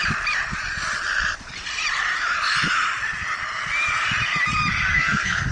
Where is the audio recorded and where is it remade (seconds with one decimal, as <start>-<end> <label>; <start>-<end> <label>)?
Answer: 0.0-4.9 recorded; 4.9-5.5 remade